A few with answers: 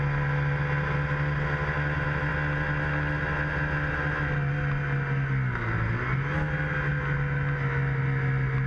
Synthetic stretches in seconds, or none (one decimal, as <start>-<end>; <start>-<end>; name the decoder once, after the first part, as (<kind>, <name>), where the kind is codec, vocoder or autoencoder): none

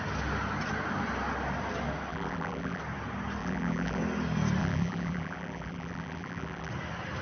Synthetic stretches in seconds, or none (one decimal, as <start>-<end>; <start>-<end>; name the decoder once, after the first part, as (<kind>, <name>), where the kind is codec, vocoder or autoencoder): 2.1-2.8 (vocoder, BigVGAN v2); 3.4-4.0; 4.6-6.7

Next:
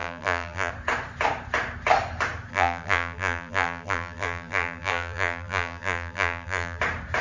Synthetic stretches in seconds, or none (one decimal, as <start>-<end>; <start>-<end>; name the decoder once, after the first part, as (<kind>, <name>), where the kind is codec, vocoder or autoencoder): 0.0-0.7 (vocoder, BigVGAN v2); 2.5-6.8

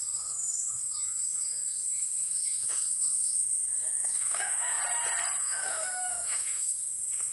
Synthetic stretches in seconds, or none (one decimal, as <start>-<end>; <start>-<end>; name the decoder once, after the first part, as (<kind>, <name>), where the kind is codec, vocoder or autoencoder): 0.0-4.8 (autoencoder, DAC-VAE); 5.4-7.3

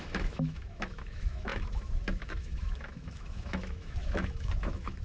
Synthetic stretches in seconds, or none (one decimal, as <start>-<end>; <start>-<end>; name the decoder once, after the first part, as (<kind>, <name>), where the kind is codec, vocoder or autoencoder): 0.0-5.0 (autoencoder, DAC-VAE)